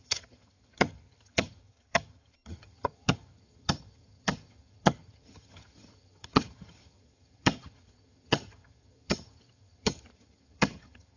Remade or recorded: remade